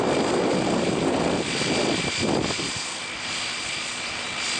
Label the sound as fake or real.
real